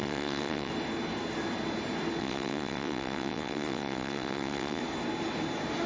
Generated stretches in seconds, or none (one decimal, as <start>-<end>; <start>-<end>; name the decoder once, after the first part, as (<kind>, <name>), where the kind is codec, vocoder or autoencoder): 0.0-0.7 (vocoder, WaveNeXt); 2.2-4.8